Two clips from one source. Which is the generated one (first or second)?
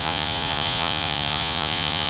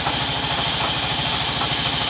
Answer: first